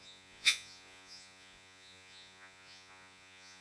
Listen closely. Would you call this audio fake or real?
fake